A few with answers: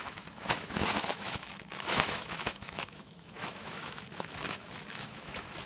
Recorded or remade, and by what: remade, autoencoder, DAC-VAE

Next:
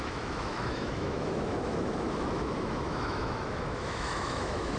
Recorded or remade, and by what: remade, autoencoder, DAC-VAE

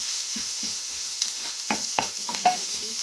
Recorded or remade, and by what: remade, autoencoder, DAC-VAE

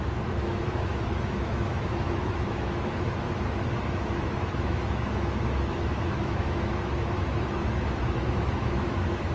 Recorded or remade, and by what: remade, autoencoder, DAC-VAE